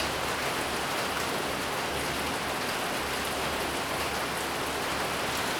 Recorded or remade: recorded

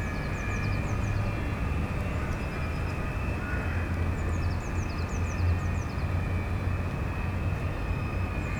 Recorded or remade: recorded